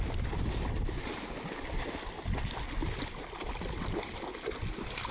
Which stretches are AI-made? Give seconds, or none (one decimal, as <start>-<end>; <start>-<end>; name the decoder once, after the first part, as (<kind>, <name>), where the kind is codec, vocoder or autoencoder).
none